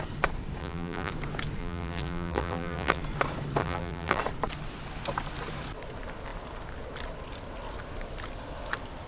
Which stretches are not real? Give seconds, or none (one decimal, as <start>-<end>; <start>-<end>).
0.6-1.1; 1.6-3.0; 3.6-4.2